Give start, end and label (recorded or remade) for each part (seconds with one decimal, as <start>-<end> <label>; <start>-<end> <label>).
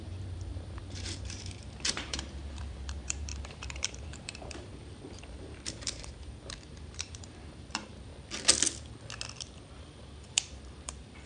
0.0-8.1 remade; 8.1-10.0 recorded; 10.0-11.3 remade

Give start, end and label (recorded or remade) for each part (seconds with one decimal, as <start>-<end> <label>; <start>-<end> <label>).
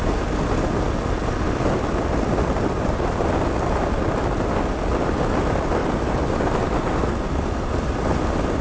0.0-8.6 recorded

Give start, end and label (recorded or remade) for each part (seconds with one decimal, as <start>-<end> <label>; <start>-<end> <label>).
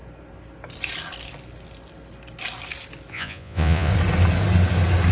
0.0-3.1 recorded; 3.1-3.9 remade; 3.9-5.1 recorded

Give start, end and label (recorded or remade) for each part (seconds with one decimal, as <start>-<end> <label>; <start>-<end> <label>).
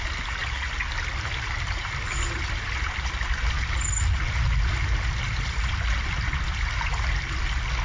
0.0-7.8 recorded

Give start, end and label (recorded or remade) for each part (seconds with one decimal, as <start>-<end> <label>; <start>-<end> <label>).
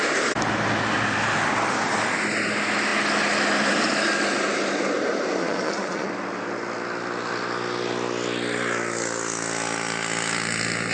0.0-5.4 recorded; 5.4-6.1 remade; 6.1-10.9 recorded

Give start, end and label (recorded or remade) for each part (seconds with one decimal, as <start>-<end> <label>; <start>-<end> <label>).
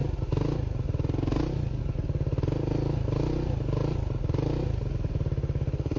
0.0-6.0 recorded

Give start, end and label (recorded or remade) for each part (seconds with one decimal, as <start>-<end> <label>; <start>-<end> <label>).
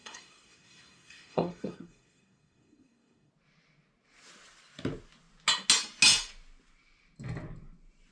0.0-3.3 remade; 3.3-8.1 recorded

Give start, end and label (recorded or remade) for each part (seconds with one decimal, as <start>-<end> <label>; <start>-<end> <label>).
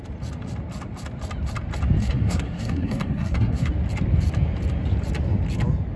0.0-2.0 recorded; 2.0-3.7 remade; 3.7-6.0 recorded